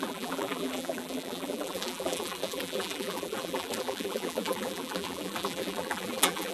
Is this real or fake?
fake